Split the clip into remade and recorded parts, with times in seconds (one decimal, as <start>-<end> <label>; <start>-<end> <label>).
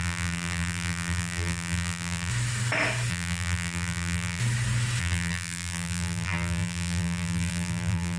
0.0-2.3 remade; 2.3-3.1 recorded; 3.1-4.4 remade; 4.4-5.0 recorded; 5.0-8.2 remade